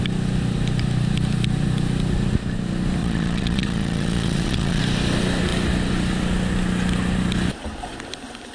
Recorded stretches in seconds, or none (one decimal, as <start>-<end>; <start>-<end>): 0.0-3.0; 4.8-8.5

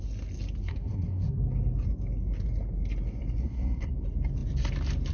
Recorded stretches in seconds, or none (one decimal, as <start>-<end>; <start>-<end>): 0.0-0.6; 1.4-3.4; 3.9-5.1

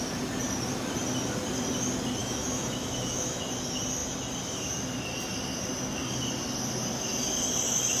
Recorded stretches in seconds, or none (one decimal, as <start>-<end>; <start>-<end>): 0.0-2.2; 3.4-8.0

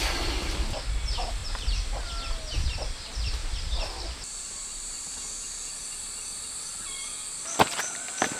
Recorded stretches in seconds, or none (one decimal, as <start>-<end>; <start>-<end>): 0.0-1.4; 2.1-3.4; 5.0-8.4